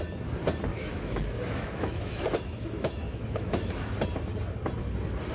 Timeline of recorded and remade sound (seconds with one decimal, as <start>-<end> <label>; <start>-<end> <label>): 0.0-0.7 recorded; 0.7-3.9 remade; 3.9-5.3 recorded